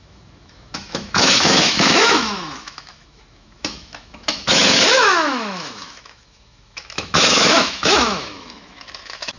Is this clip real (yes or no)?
no